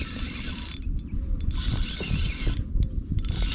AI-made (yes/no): no